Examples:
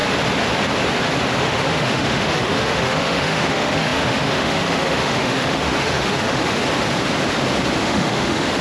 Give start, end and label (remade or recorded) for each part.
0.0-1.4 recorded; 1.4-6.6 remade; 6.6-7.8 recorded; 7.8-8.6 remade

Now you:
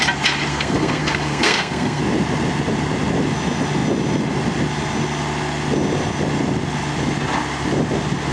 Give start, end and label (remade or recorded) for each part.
0.0-0.5 recorded; 0.5-2.0 remade; 2.0-8.3 recorded

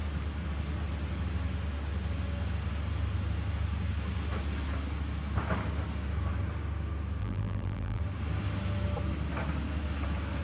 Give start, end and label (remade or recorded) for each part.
0.0-7.2 recorded; 7.2-8.0 remade; 8.0-10.4 recorded

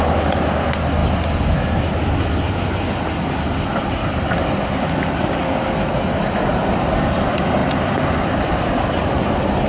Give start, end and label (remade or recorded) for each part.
0.0-9.7 recorded

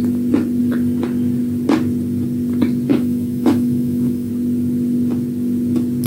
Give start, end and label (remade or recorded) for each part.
0.0-2.9 recorded; 2.9-4.3 remade; 4.3-6.1 recorded